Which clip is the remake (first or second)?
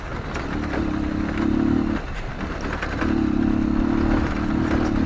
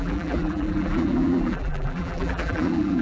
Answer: second